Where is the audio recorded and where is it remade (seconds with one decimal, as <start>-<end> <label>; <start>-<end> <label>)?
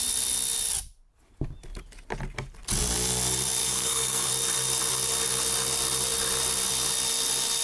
0.0-3.6 recorded; 3.6-4.3 remade; 4.3-7.6 recorded